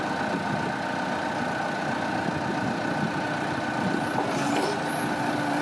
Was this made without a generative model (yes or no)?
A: yes